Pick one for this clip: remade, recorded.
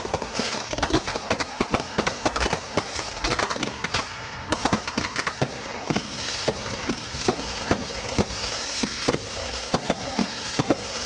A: remade